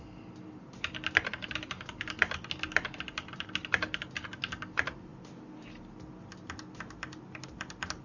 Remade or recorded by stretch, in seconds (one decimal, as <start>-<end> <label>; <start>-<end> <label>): 0.0-8.0 recorded